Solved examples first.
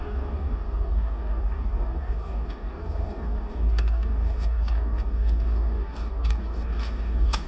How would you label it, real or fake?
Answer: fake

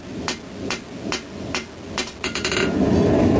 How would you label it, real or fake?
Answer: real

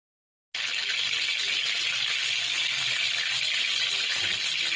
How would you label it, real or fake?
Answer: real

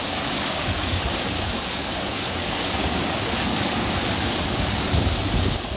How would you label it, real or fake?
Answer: fake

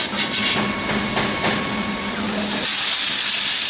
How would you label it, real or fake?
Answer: real